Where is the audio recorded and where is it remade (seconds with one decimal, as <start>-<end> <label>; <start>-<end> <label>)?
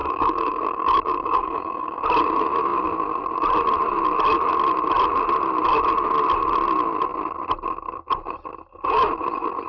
0.0-2.0 remade; 2.0-9.7 recorded